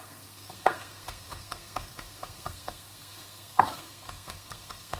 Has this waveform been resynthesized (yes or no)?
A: yes